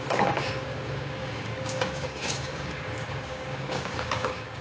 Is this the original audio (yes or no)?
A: no